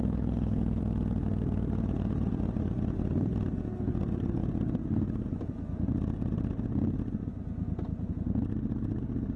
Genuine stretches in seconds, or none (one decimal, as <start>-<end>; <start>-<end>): 0.8-9.4